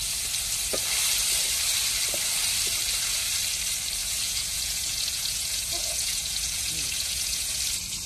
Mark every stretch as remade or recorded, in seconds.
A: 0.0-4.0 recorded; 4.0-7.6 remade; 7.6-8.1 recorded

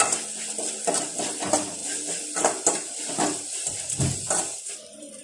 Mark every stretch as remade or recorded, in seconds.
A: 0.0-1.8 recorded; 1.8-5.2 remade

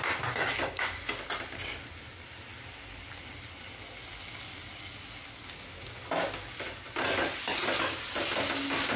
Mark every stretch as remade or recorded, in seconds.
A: 0.0-9.0 recorded

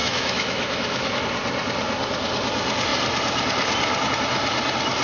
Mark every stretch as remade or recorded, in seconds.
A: 0.0-1.2 remade; 1.2-5.0 recorded